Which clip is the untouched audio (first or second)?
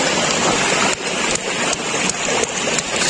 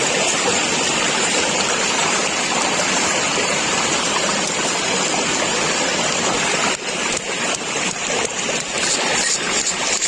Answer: first